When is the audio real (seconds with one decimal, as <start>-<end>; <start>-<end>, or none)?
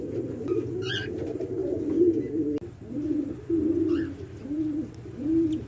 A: 0.0-5.7